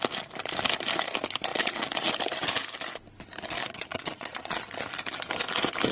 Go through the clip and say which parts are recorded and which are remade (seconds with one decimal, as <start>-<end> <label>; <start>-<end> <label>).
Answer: 0.0-1.5 recorded; 1.5-2.1 remade; 2.1-3.6 recorded; 3.6-4.6 remade; 4.6-5.9 recorded